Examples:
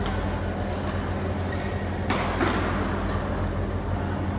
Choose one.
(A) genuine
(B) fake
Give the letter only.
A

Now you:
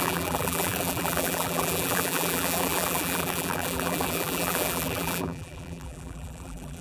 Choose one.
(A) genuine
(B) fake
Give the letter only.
B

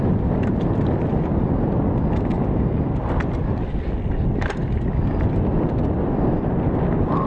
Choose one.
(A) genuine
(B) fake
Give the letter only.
A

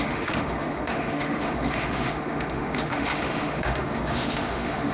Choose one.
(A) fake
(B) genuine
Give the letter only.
A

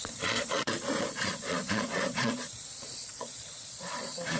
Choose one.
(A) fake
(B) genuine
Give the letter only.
A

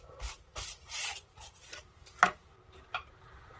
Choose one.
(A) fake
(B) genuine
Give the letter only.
A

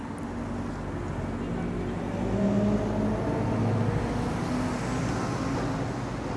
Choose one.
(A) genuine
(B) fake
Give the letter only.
A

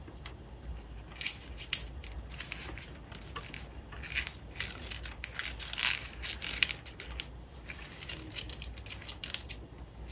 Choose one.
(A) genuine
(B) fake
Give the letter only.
A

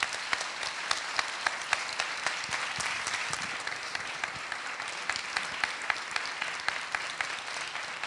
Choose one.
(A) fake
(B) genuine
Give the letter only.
B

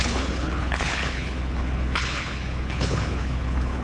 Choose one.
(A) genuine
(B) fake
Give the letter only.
B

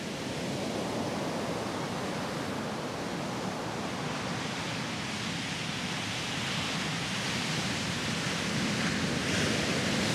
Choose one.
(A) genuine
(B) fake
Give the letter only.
A